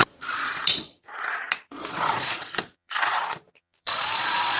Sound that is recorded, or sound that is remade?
remade